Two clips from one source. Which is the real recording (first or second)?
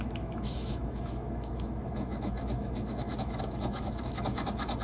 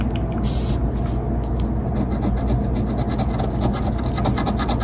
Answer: second